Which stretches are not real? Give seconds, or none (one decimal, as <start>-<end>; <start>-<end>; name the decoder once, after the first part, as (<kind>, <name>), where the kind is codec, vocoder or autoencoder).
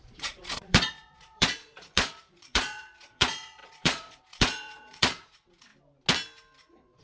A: 0.0-5.7 (vocoder, Vocos); 6.6-7.0